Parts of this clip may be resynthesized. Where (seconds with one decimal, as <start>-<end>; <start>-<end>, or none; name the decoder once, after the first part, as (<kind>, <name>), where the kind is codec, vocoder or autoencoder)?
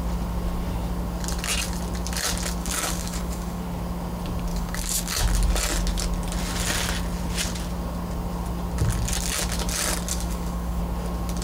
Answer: 2.6-3.6 (codec, DAC); 4.5-5.1; 10.1-10.8